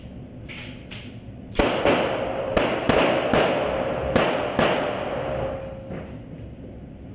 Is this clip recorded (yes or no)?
yes